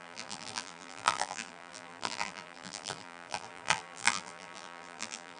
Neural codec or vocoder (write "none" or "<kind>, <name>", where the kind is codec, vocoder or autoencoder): vocoder, BigVGAN v2